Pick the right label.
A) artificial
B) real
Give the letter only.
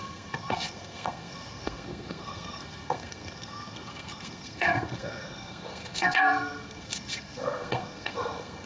A